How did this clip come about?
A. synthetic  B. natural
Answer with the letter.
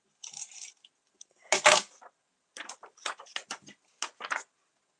B